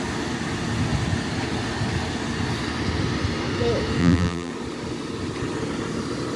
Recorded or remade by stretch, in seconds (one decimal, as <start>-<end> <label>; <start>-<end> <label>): 0.0-4.0 recorded; 4.0-4.5 remade; 4.5-6.4 recorded